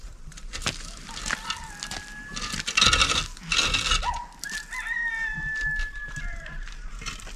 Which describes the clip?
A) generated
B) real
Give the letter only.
B